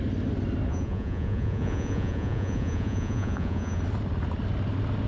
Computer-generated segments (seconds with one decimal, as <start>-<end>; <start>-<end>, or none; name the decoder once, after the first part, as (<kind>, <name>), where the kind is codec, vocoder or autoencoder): 0.7-3.8 (vocoder, Vocos)